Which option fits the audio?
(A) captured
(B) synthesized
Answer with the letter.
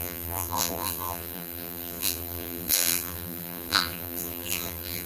B